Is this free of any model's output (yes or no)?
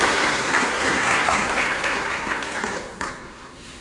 no